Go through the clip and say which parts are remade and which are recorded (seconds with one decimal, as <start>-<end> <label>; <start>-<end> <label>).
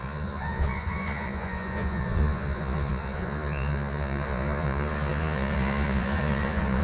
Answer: 0.0-6.8 remade